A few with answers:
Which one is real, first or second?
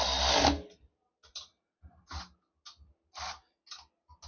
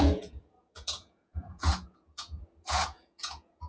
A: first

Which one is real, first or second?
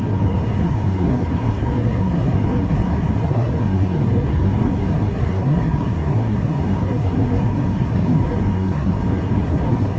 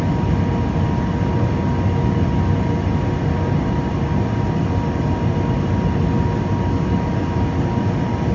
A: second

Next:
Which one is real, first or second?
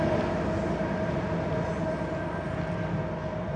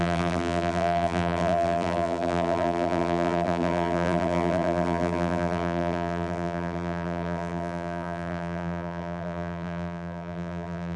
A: first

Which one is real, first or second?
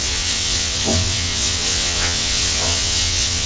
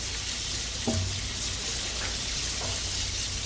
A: second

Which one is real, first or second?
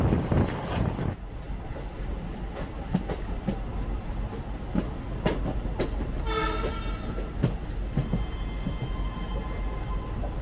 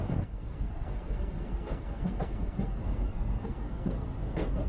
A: first